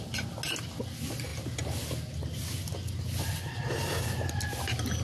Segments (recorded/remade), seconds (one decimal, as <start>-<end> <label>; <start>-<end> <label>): 0.0-5.0 recorded